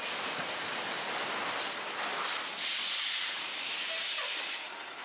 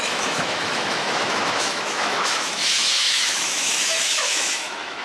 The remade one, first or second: second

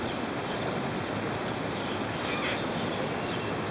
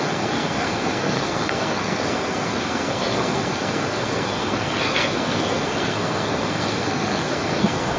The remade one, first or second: second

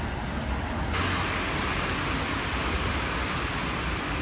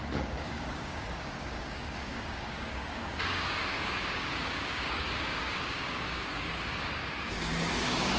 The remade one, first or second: second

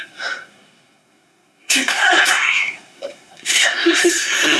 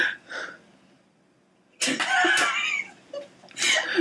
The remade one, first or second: first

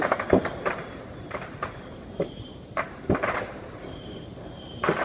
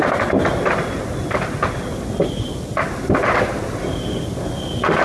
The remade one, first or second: first